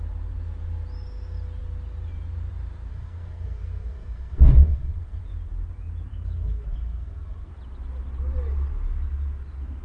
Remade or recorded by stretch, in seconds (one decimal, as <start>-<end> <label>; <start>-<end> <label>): 0.0-2.9 recorded; 2.9-5.2 remade; 5.2-6.1 recorded; 6.1-7.5 remade; 7.5-9.8 recorded